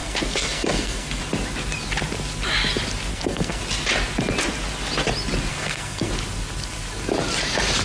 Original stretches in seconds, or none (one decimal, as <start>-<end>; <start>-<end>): 1.2-3.1; 3.6-5.5; 6.1-7.8